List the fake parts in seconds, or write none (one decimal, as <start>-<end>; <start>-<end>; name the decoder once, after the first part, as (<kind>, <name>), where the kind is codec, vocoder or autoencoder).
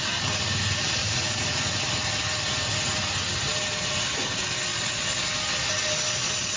1.0-1.8 (vocoder, Vocos)